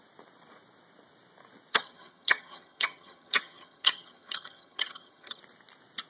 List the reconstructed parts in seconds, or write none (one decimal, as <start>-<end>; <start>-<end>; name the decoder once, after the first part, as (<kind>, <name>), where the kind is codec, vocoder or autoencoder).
1.7-5.4 (vocoder, HiFi-GAN)